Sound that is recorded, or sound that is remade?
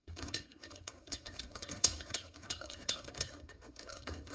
remade